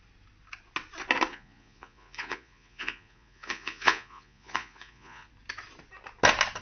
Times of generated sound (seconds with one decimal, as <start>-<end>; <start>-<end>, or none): 1.3-5.3